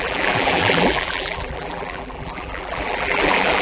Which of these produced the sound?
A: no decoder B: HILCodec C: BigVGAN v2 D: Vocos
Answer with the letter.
C